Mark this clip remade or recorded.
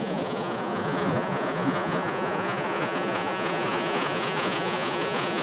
remade